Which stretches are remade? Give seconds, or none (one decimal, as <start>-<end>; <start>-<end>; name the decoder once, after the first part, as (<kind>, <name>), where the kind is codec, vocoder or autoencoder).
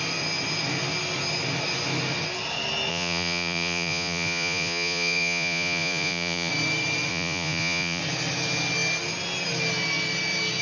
2.9-6.5 (vocoder, Vocos); 7.1-8.0